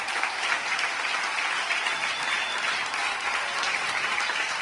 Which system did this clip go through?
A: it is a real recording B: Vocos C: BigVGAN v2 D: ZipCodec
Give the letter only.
A